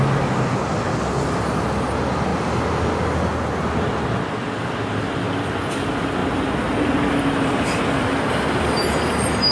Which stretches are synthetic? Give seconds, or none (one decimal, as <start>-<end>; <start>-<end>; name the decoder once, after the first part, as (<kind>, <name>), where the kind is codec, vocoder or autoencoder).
none